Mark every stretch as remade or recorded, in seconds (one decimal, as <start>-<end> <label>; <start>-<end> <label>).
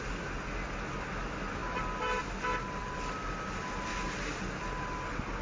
0.0-5.4 recorded